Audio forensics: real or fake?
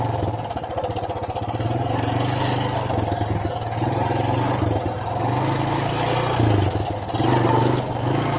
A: real